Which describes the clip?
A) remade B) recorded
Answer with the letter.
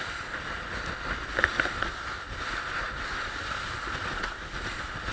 B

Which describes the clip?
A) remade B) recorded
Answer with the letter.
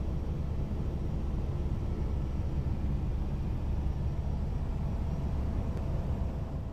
B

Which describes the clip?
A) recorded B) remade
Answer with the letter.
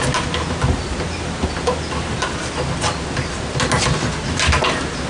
A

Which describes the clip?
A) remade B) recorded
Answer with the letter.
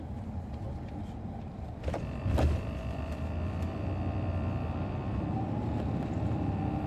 A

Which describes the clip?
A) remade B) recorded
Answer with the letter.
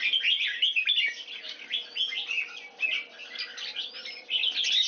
B